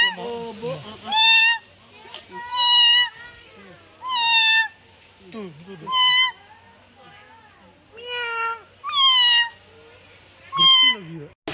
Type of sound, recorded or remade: recorded